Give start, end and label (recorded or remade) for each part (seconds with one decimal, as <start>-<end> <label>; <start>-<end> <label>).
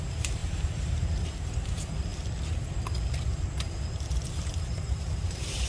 0.0-2.1 remade; 2.1-4.5 recorded; 4.5-5.7 remade